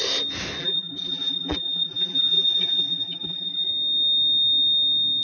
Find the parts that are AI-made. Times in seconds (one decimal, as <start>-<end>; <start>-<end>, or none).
0.6-3.7